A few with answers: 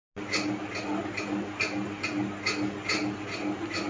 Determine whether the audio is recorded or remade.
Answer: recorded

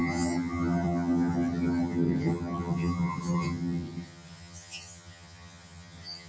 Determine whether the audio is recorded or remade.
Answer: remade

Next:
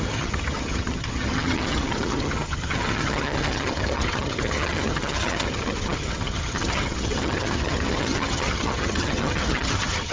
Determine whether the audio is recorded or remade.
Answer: remade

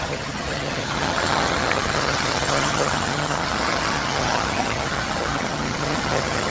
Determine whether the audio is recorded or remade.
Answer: remade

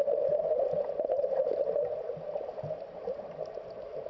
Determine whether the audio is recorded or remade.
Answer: recorded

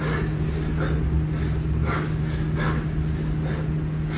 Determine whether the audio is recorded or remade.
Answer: recorded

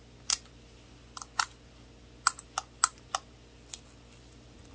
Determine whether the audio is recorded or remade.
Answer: recorded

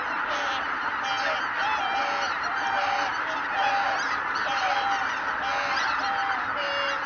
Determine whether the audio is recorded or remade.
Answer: recorded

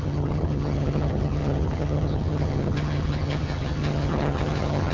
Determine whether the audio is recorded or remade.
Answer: remade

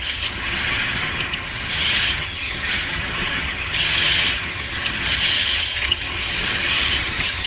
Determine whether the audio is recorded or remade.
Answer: remade